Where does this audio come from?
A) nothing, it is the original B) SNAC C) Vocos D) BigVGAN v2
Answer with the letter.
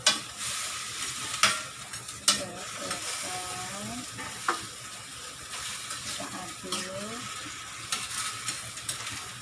A